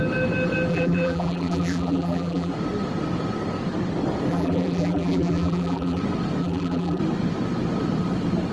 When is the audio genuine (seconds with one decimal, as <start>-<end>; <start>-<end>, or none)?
0.0-0.7; 2.5-4.3; 6.0-6.4; 7.0-8.5